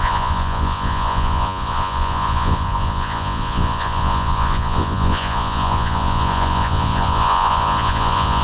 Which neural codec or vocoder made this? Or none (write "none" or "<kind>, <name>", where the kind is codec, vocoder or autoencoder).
vocoder, Vocos